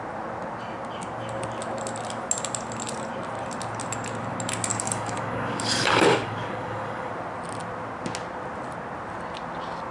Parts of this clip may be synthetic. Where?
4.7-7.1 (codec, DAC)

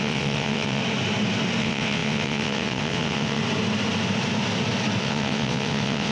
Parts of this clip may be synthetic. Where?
0.0-0.8 (vocoder, WaveNeXt); 1.6-3.4; 5.0-6.1

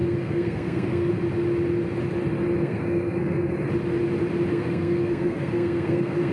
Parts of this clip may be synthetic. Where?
0.0-1.1 (codec, SNAC); 2.6-3.5; 4.5-6.3

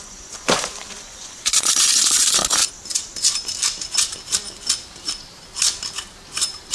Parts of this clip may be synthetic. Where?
0.0-2.6 (vocoder, Vocos)

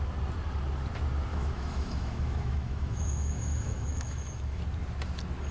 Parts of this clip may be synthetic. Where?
1.3-4.6 (autoencoder, DAC-VAE)

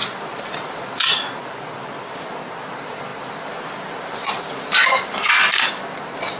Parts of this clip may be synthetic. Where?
none